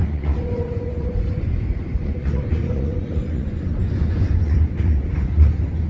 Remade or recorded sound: remade